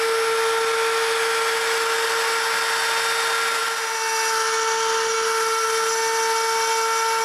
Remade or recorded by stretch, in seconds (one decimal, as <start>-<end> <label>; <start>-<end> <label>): 0.0-7.2 recorded